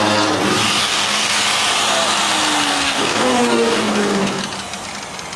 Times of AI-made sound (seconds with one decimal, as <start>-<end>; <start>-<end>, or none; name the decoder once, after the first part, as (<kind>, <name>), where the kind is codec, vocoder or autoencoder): 0.8-1.3 (codec, DAC); 2.7-4.4